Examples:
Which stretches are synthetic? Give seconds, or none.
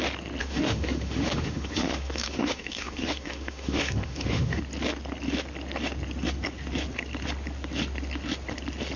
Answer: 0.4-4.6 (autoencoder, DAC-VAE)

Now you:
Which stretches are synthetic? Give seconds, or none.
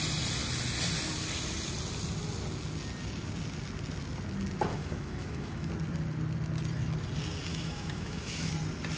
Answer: 4.7-5.7 (autoencoder, DAC-VAE); 7.5-8.5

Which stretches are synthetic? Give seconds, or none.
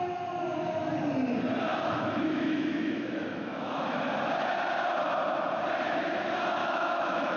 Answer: 1.7-4.0 (autoencoder, DAC-VAE); 6.6-7.4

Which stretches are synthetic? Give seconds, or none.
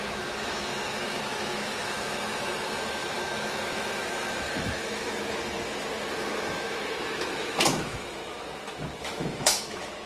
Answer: 0.0-8.2 (autoencoder, DAC-VAE); 9.0-10.1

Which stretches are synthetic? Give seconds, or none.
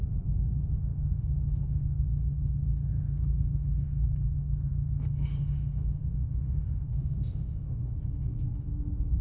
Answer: 0.0-9.2 (autoencoder, DAC-VAE)